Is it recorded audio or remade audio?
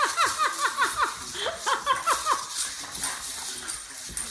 recorded